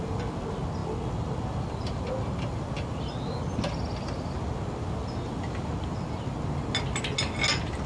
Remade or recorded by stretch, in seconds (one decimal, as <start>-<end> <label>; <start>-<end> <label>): 0.0-7.9 recorded